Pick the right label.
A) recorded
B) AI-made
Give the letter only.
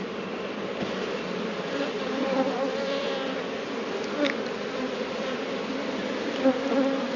B